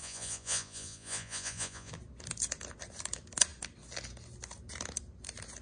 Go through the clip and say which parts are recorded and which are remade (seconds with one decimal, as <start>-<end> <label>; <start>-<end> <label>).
0.0-1.9 remade; 1.9-5.6 recorded